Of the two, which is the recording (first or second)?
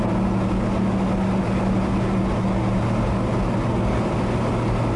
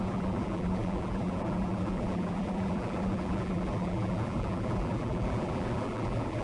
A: first